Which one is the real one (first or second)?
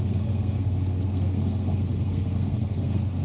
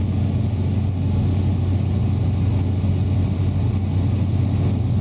second